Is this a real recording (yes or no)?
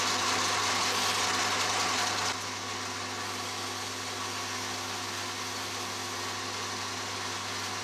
yes